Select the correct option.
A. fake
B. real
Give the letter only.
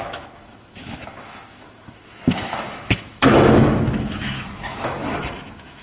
A